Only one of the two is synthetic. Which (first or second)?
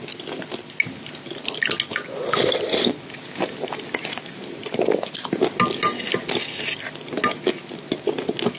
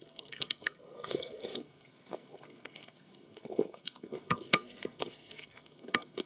second